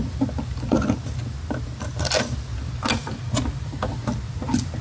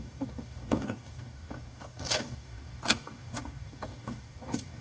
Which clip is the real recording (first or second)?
first